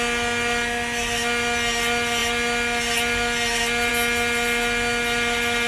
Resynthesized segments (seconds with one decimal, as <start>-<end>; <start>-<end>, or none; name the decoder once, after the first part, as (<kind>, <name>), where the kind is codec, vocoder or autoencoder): none